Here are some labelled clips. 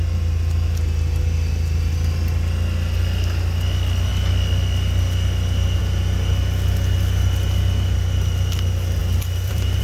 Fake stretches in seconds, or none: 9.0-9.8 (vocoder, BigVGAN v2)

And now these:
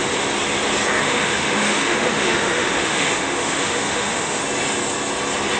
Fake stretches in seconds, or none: 1.0-4.4 (autoencoder, DAC-VAE)

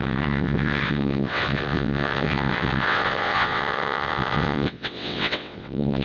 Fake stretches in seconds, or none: 0.0-6.0 (vocoder, WaveNeXt)